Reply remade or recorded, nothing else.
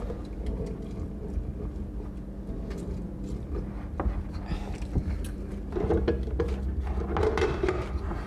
recorded